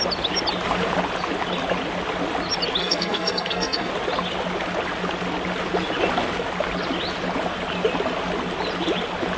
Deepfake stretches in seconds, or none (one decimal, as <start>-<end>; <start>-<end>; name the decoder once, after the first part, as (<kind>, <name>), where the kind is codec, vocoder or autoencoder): 2.8-3.9 (codec, SNAC)